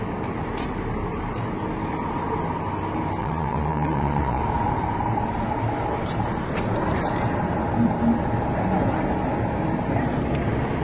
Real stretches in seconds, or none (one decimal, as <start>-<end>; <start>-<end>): 0.0-3.2; 4.4-10.8